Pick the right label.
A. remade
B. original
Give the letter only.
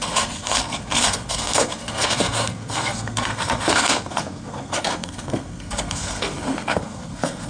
A